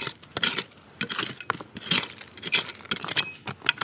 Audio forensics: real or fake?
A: real